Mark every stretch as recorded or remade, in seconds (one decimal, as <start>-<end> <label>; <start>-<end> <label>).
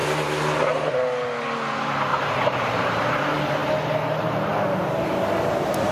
0.0-2.1 recorded; 2.1-3.0 remade; 3.0-5.9 recorded